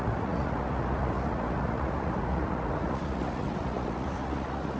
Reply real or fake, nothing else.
fake